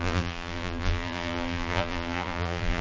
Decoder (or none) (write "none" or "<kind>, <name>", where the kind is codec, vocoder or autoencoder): vocoder, BigVGAN v2